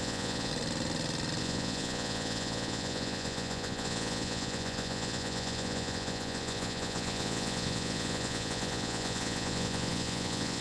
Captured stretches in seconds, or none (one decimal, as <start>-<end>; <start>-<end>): 0.5-1.4